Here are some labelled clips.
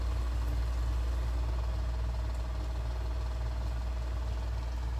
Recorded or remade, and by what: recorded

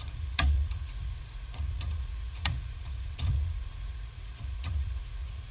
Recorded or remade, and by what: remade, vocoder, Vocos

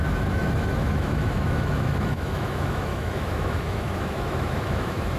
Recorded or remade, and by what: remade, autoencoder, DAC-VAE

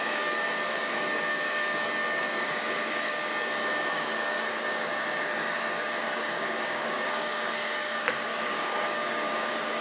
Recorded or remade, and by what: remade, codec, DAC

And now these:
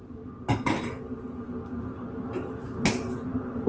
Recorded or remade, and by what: recorded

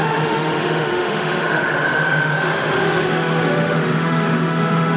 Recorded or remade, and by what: remade, autoencoder, DAC-VAE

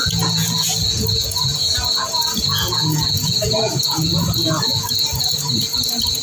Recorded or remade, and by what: remade, vocoder, Vocos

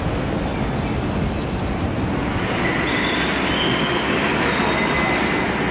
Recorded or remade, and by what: recorded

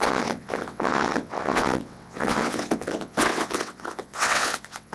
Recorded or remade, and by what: remade, vocoder, WaveNeXt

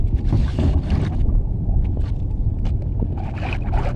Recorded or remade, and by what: recorded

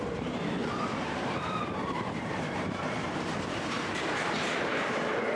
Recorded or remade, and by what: remade, vocoder, BigVGAN v2